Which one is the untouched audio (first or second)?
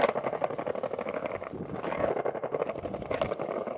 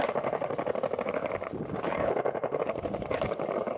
first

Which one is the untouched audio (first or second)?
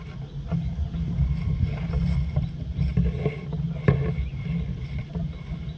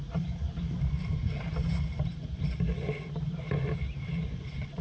first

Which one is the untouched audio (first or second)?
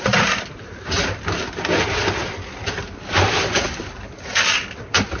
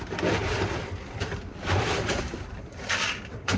first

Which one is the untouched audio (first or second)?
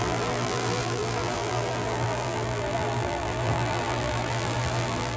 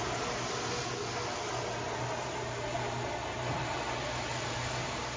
second